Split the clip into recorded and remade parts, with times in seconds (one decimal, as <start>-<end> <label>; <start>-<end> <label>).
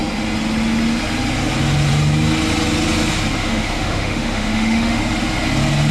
0.0-3.4 recorded; 3.4-5.0 remade; 5.0-5.9 recorded